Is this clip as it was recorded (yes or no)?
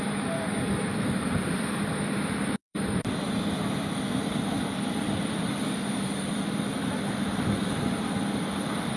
no